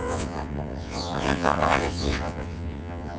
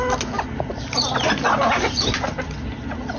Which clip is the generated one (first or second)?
first